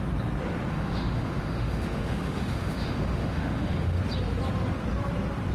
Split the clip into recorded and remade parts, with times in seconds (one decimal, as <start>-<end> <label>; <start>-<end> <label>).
0.0-0.7 recorded; 0.7-4.0 remade; 4.0-5.5 recorded

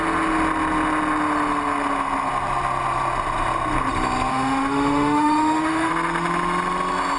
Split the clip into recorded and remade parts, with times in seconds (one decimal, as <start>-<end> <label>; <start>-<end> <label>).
0.0-4.3 recorded; 4.3-5.9 remade; 5.9-7.2 recorded

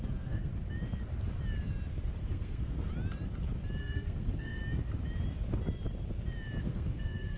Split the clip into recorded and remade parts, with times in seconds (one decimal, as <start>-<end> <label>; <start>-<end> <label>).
0.0-0.5 remade; 0.5-2.2 recorded; 2.2-2.9 remade; 2.9-3.8 recorded; 3.8-4.6 remade; 4.6-6.6 recorded; 6.6-7.4 remade

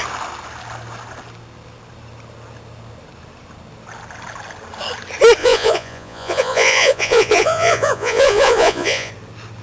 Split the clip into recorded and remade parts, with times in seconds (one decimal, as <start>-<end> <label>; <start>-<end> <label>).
0.0-5.4 recorded; 5.4-9.1 remade; 9.1-9.6 recorded

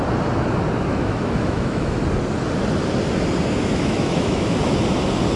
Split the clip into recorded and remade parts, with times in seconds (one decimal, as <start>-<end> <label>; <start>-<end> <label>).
0.0-0.9 recorded; 0.9-2.0 remade; 2.0-3.7 recorded; 3.7-4.5 remade; 4.5-5.4 recorded

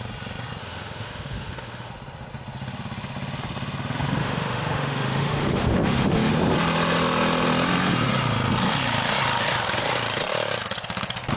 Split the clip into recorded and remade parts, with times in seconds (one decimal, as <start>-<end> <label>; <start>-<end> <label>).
0.0-0.6 recorded; 0.6-1.9 remade; 1.9-4.2 recorded; 4.2-6.3 remade; 6.3-11.4 recorded

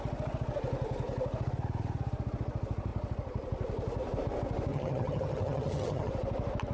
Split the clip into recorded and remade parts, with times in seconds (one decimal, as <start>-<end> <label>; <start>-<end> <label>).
0.0-4.7 recorded; 4.7-6.1 remade; 6.1-6.7 recorded

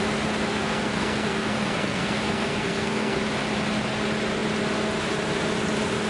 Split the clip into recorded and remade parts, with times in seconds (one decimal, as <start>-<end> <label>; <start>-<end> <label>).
0.0-0.5 recorded; 0.5-3.2 remade; 3.2-6.1 recorded